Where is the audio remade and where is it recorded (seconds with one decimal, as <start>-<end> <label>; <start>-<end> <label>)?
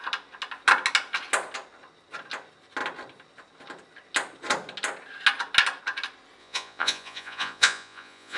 0.0-6.4 recorded; 6.4-8.4 remade